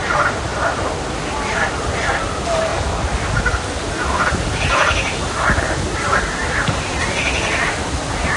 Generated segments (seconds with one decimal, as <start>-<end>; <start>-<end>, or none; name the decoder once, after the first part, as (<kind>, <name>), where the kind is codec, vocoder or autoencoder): none